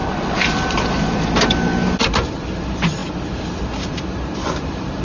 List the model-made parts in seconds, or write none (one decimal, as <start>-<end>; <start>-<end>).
0.5-1.7; 2.6-5.0